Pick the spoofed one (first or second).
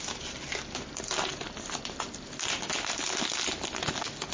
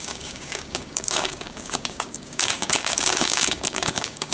second